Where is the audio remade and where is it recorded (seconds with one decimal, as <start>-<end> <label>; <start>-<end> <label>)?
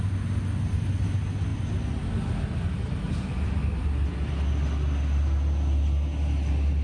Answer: 0.0-6.8 recorded